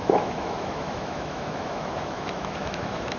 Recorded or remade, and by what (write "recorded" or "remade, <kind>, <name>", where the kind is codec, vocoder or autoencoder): remade, autoencoder, DAC-VAE